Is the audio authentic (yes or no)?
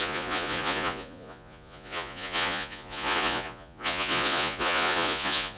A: no